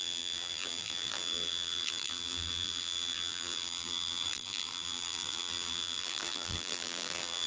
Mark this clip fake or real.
fake